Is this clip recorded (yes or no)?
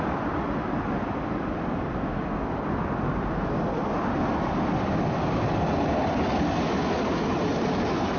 yes